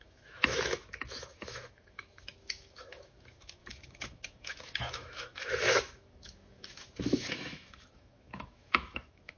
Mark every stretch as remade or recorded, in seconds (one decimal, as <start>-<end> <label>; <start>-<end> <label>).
0.0-9.4 remade